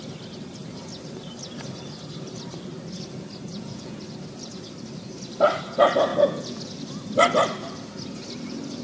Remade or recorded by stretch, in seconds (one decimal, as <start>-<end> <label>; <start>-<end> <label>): 0.0-3.5 recorded; 3.5-4.0 remade; 4.0-6.1 recorded; 6.1-6.6 remade; 6.6-8.8 recorded